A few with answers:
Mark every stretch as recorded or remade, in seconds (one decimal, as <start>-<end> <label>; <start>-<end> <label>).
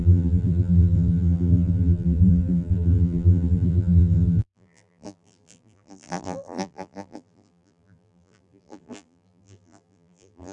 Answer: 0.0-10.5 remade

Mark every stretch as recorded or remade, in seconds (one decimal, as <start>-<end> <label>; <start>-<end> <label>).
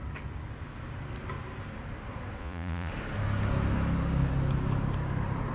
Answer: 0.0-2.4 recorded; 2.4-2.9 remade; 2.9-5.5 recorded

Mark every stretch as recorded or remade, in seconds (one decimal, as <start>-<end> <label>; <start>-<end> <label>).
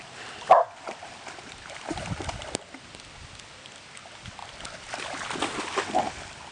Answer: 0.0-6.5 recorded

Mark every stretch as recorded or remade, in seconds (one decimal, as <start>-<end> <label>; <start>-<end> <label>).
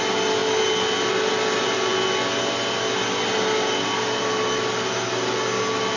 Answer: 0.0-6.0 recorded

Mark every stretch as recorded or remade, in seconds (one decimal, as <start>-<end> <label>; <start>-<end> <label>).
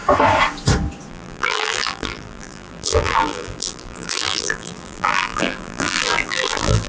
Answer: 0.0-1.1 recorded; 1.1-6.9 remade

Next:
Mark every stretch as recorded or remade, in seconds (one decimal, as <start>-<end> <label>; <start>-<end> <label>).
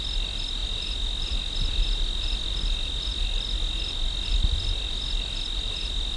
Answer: 0.0-6.2 recorded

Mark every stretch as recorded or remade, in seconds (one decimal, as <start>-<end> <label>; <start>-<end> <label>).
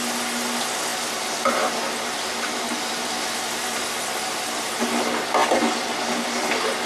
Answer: 0.0-6.9 recorded